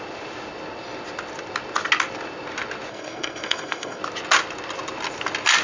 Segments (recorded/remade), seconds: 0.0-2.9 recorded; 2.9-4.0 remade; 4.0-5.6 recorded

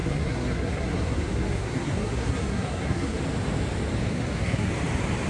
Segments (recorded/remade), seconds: 0.0-3.2 remade; 3.2-4.1 recorded; 4.1-4.7 remade; 4.7-5.3 recorded

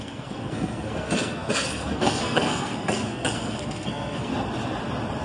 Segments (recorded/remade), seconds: 0.0-4.3 remade; 4.3-5.2 recorded